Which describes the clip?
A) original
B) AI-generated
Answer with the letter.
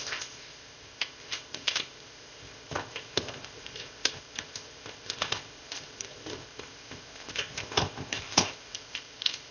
B